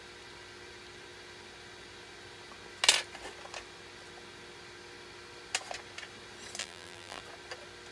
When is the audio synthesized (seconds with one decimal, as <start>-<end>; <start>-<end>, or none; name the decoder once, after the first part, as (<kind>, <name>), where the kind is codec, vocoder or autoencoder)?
6.6-7.2 (vocoder, BigVGAN v2)